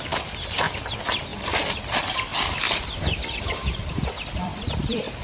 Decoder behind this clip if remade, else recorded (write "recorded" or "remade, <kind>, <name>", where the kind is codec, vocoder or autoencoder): remade, vocoder, BigVGAN v2